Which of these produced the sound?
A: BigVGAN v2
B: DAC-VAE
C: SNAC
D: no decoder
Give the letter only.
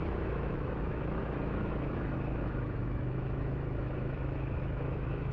B